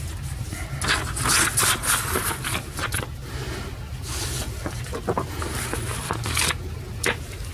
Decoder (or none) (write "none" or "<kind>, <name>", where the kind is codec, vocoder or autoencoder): none